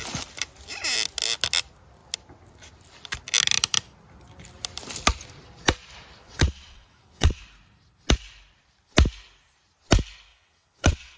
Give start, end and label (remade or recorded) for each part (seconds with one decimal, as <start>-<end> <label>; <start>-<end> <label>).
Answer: 0.0-6.2 recorded; 6.2-7.4 remade; 7.4-10.3 recorded; 10.3-11.2 remade